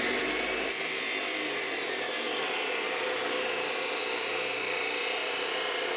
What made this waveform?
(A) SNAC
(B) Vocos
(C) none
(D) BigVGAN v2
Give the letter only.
C